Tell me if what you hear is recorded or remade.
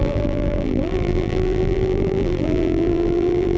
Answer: remade